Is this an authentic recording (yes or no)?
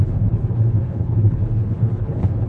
no